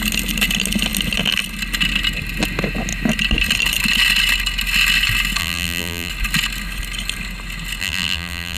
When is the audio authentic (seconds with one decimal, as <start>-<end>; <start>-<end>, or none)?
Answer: 0.0-5.4; 6.1-7.8